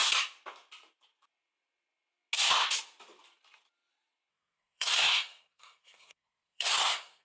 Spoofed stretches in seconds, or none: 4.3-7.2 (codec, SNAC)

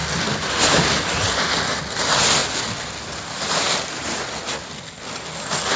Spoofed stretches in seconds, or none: none

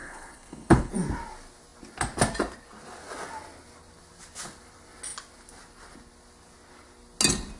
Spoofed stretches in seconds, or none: 0.0-0.9 (codec, HILCodec)

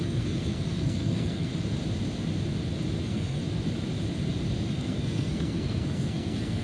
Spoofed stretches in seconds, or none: 0.0-1.5 (codec, SNAC); 3.0-3.4; 4.7-6.6

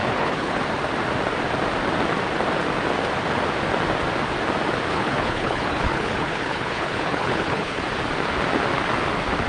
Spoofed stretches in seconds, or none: 0.0-0.6 (codec, HILCodec); 4.9-7.8

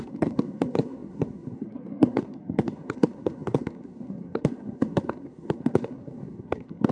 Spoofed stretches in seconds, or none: 0.0-6.9 (codec, SNAC)